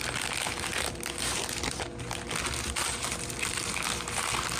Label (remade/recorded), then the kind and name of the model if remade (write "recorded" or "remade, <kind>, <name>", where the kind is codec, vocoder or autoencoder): recorded